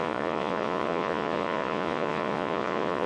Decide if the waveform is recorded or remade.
remade